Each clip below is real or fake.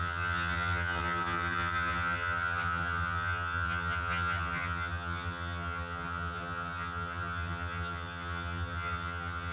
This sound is fake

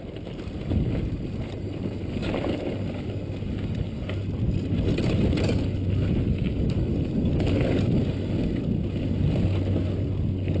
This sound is real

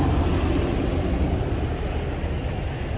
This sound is real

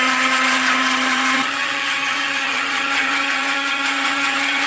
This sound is fake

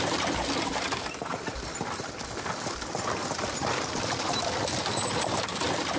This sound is real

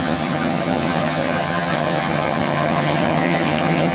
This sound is fake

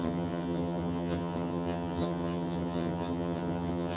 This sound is fake